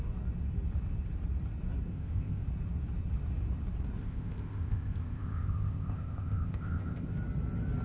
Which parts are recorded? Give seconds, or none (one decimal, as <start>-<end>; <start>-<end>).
0.0-1.9; 2.4-4.0; 7.1-7.8